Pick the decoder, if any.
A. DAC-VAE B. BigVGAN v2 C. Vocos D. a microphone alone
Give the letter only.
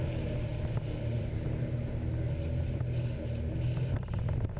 D